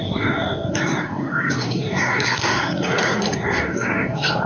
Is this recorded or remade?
remade